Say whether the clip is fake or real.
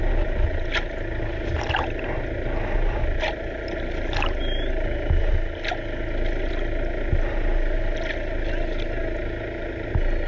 real